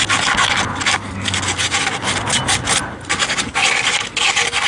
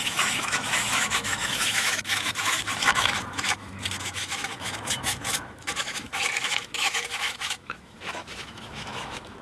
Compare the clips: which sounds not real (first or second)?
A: second